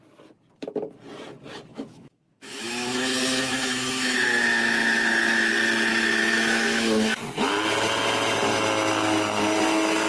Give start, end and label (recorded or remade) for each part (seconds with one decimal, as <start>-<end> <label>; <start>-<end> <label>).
0.0-1.7 recorded; 1.7-5.5 remade; 5.5-5.9 recorded; 5.9-7.2 remade; 7.2-10.1 recorded